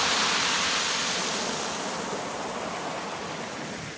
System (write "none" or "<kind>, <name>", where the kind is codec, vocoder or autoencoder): none